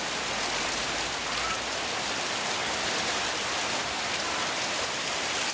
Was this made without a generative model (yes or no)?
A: yes